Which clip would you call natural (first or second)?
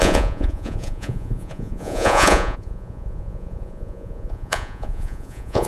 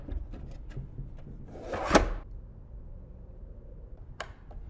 second